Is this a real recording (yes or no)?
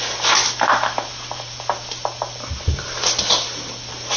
yes